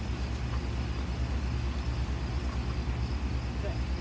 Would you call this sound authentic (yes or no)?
yes